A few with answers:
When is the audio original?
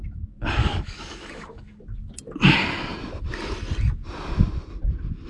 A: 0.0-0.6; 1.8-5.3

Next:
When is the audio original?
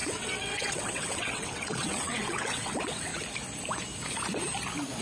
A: 3.1-5.0